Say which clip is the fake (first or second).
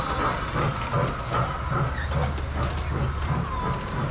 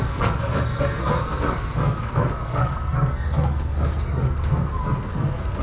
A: second